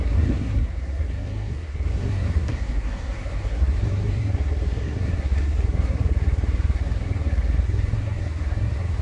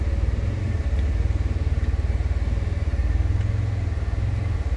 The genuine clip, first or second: second